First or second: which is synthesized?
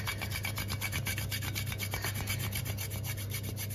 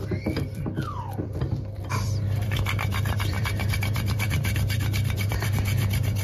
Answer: second